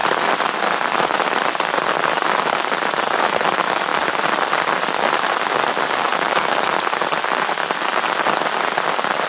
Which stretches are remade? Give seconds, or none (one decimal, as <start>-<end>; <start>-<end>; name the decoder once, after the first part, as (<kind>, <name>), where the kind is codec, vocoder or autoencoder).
0.0-3.9 (vocoder, BigVGAN v2); 4.6-6.1; 6.6-9.3